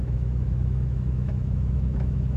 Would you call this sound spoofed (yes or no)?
yes